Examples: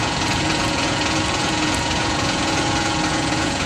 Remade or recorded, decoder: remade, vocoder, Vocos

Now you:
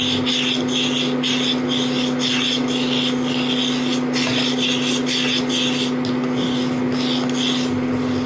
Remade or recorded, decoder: recorded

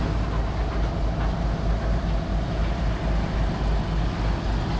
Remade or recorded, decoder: recorded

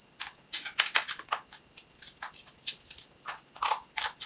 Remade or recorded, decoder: recorded